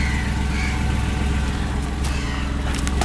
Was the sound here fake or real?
real